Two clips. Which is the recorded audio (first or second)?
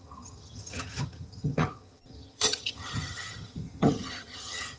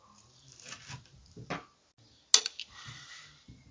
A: second